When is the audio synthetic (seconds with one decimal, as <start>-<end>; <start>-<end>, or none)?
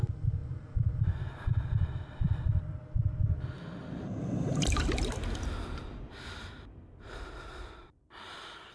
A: 0.0-2.8; 6.4-8.7